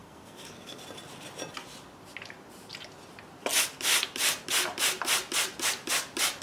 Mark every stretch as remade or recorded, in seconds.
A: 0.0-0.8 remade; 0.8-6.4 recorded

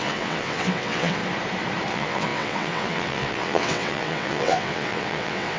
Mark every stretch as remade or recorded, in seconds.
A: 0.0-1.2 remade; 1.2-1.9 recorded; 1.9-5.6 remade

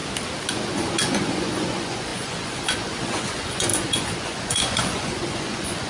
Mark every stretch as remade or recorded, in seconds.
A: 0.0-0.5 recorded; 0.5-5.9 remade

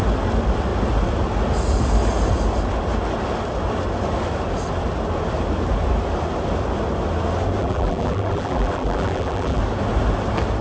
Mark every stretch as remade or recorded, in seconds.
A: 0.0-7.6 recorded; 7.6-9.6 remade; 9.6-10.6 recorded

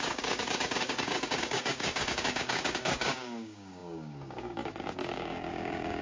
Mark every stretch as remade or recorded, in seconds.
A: 0.0-6.0 remade

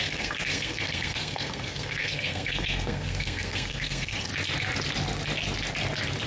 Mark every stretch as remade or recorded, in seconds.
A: 0.0-4.3 remade; 4.3-6.3 recorded